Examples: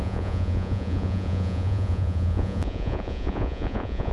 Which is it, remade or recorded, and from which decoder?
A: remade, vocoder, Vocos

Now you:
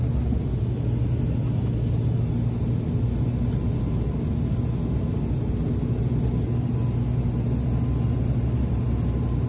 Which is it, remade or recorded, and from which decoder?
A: recorded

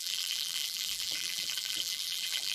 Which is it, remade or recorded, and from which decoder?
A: remade, vocoder, BigVGAN v2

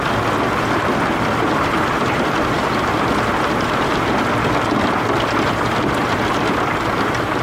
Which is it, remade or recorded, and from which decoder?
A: recorded